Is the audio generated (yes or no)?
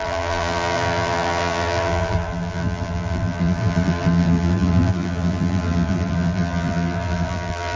yes